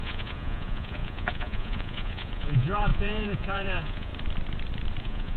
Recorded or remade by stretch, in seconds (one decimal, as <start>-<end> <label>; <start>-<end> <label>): 0.0-4.1 remade; 4.1-5.0 recorded; 5.0-5.4 remade